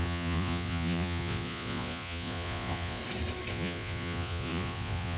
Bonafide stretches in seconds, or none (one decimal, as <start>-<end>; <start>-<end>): 3.0-3.5